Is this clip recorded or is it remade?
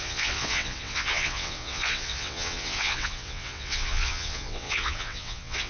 remade